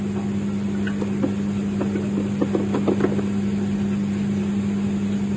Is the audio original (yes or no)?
yes